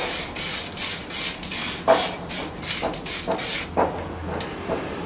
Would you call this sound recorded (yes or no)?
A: yes